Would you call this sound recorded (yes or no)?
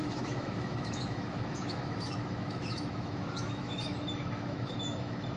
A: no